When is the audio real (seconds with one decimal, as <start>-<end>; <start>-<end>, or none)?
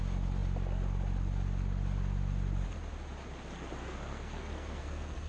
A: 0.0-3.8